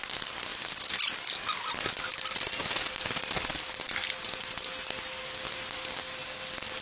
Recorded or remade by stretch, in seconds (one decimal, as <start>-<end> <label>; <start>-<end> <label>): 0.0-6.8 recorded